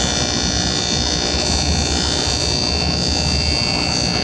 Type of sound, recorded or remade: recorded